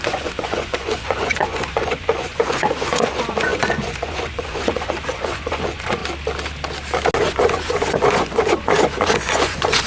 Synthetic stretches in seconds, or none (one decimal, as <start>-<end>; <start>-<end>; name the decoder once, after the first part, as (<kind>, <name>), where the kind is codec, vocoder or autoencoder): 0.0-6.0 (vocoder, Vocos); 7.2-9.9